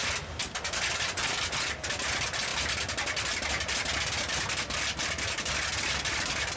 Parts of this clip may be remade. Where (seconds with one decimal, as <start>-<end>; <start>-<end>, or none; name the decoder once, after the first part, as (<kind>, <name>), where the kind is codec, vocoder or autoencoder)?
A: none